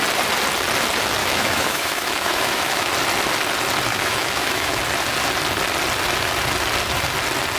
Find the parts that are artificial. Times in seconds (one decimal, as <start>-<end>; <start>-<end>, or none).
1.2-2.9; 3.9-4.8